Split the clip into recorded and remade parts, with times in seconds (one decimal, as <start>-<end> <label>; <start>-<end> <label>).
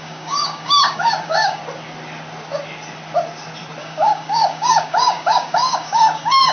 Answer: 0.0-1.6 remade; 1.6-3.8 recorded; 3.8-6.5 remade